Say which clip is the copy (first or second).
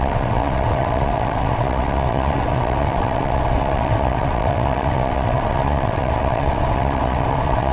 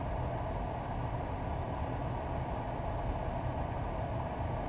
first